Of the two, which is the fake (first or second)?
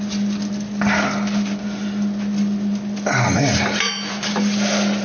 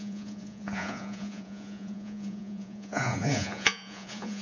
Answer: second